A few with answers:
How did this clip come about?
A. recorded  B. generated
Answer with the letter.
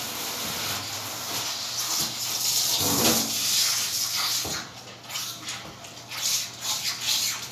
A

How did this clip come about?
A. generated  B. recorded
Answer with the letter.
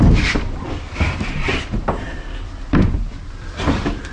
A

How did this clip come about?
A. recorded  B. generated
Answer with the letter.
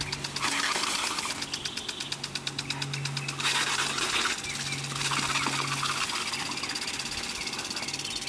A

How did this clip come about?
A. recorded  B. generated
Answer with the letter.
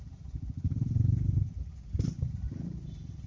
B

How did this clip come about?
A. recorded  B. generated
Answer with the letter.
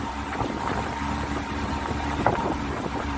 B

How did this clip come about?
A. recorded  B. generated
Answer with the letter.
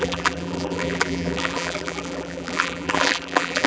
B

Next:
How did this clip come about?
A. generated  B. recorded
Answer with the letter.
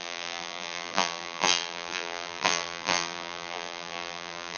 A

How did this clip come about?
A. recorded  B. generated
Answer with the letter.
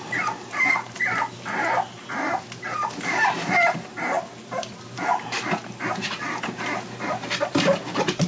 B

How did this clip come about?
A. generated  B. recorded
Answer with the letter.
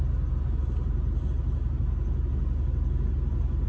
B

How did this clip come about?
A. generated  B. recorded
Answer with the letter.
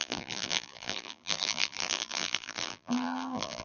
A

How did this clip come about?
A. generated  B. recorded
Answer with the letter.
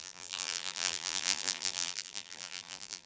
A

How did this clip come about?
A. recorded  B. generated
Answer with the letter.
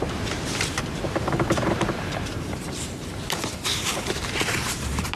B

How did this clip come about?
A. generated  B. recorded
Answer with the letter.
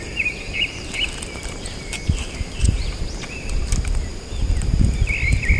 A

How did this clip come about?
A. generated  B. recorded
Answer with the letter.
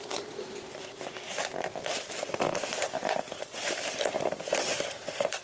A